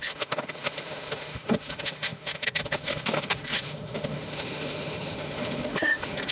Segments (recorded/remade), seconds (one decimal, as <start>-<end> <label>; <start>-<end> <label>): 0.0-6.3 remade